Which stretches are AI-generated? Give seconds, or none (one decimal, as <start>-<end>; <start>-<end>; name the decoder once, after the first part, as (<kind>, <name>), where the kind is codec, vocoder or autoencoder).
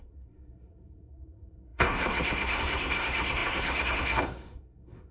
0.0-5.1 (codec, SNAC)